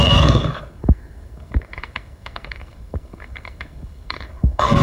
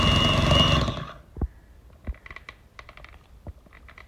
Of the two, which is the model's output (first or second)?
first